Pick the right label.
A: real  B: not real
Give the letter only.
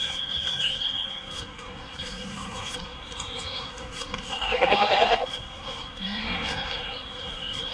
B